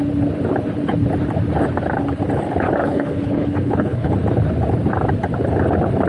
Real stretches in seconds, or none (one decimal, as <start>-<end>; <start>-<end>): 0.0-2.8; 4.1-6.1